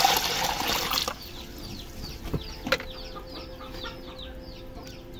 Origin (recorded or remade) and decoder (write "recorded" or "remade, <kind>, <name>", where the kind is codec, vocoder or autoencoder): recorded